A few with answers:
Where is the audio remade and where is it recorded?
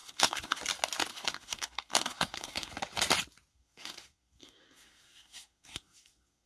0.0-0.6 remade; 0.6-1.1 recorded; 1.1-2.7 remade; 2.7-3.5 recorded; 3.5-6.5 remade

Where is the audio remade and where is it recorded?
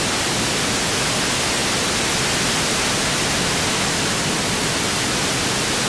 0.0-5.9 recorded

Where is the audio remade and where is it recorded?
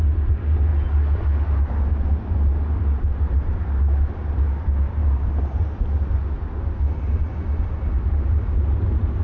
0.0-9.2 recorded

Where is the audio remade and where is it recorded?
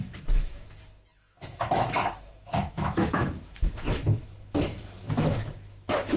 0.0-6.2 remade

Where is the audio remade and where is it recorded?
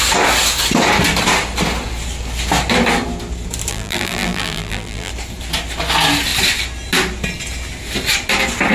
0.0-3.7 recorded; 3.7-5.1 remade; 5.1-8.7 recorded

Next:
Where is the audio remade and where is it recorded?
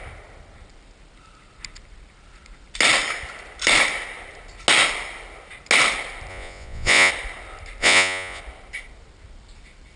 0.0-6.3 recorded; 6.3-7.1 remade; 7.1-7.8 recorded; 7.8-8.4 remade; 8.4-10.0 recorded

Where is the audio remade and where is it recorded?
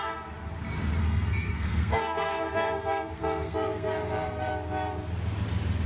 0.0-1.0 recorded; 1.0-4.5 remade; 4.5-5.9 recorded